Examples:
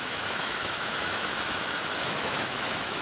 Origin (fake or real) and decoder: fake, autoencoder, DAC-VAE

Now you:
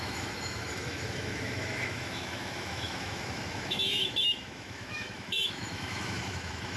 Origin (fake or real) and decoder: fake, autoencoder, DAC-VAE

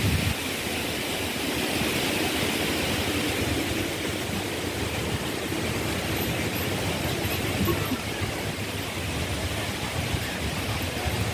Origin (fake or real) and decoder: real